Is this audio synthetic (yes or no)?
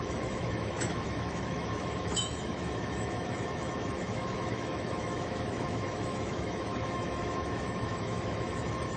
yes